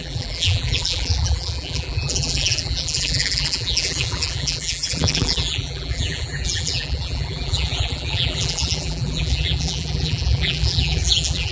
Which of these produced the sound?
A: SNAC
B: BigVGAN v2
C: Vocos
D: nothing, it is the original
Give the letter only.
B